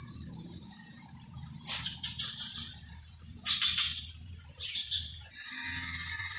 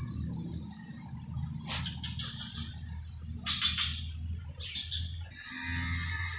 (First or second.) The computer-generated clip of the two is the first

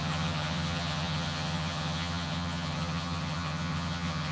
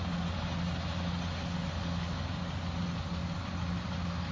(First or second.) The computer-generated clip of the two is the first